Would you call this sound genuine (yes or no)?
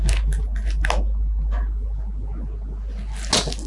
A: yes